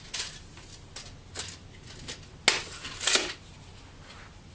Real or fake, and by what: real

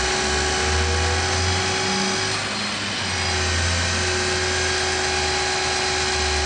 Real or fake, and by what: real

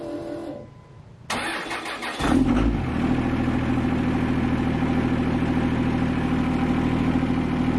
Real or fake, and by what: real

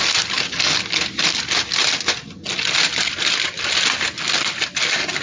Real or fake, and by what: real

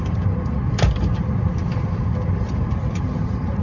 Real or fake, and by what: fake, vocoder, BigVGAN v2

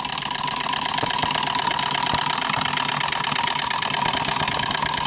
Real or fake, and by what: real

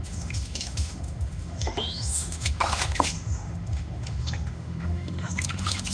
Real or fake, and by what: fake, autoencoder, DAC-VAE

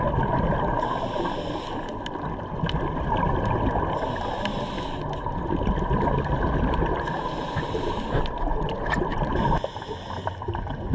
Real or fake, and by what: real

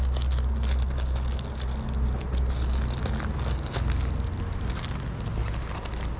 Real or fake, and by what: real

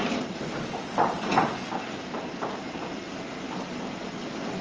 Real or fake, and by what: real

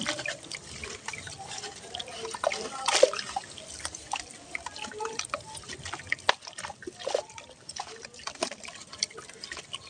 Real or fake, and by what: real